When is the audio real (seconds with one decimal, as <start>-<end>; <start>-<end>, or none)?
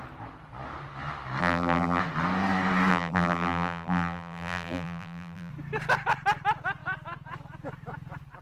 0.0-1.4; 2.0-2.9; 5.5-8.4